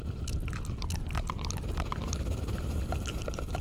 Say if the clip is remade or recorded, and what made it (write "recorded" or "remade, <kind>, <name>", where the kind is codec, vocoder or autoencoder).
recorded